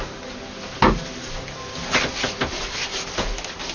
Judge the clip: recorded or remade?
recorded